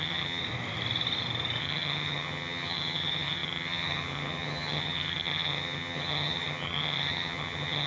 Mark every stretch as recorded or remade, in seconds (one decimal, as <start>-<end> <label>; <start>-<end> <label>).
0.0-0.4 remade; 0.4-1.6 recorded; 1.6-7.9 remade